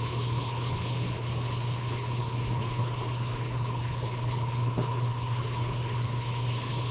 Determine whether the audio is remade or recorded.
remade